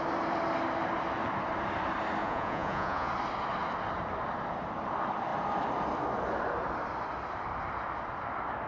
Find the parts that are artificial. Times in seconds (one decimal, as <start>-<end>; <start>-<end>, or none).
2.2-3.1